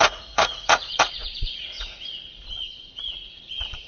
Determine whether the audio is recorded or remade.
remade